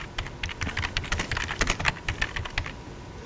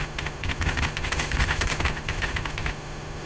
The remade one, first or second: second